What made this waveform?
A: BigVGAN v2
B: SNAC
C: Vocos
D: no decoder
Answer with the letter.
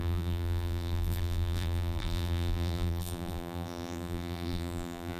A